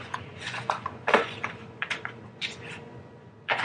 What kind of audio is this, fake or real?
fake